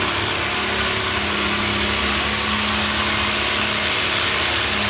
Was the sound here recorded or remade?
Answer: recorded